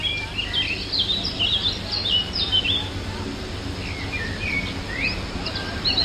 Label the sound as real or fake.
real